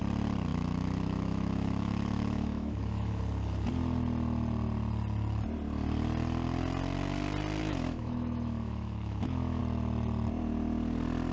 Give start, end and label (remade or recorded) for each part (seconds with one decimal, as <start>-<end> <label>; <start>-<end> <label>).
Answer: 0.0-0.5 recorded; 0.5-3.2 remade; 3.2-7.6 recorded; 7.6-9.6 remade; 9.6-11.3 recorded